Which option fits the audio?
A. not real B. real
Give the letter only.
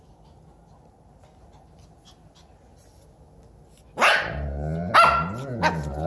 B